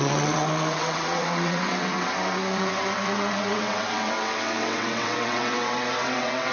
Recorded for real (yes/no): no